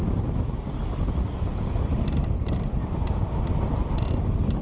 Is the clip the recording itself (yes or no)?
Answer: yes